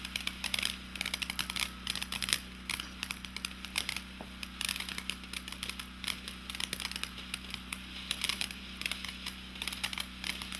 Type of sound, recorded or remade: recorded